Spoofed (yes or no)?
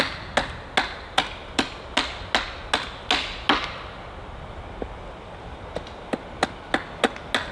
no